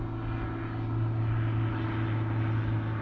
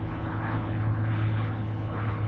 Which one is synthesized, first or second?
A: second